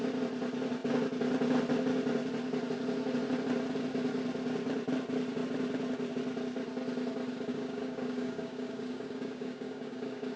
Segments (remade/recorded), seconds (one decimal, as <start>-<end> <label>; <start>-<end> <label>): 0.0-7.5 recorded; 7.5-10.4 remade

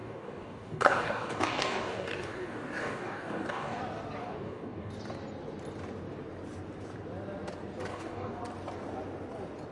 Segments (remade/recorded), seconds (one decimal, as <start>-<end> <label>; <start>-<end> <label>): 0.0-3.8 remade; 3.8-4.2 recorded; 4.2-4.9 remade; 4.9-7.9 recorded; 7.9-8.4 remade; 8.4-9.7 recorded

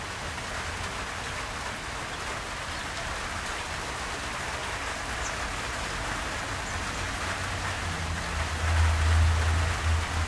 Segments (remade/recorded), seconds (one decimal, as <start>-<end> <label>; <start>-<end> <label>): 0.0-10.3 recorded

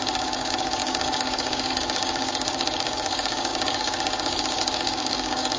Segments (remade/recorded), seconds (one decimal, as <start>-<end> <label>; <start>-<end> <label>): 0.0-5.6 remade

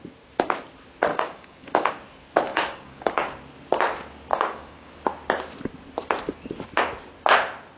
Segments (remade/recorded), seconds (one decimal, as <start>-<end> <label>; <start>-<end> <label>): 0.0-1.1 recorded; 1.1-1.9 remade; 1.9-2.5 recorded; 2.5-3.4 remade; 3.4-4.3 recorded; 4.3-4.9 remade; 4.9-7.8 recorded

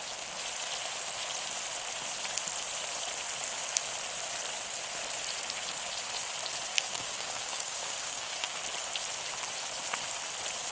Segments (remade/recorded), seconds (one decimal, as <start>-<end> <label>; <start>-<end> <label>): 0.0-6.7 recorded; 6.7-8.6 remade; 8.6-10.7 recorded